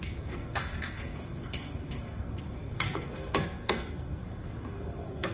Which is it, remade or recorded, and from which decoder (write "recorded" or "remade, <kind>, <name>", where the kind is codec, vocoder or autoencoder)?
remade, codec, SNAC